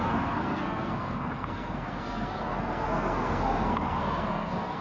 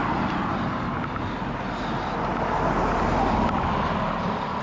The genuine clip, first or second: second